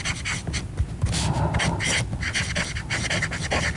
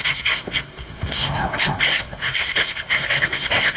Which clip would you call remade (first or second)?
second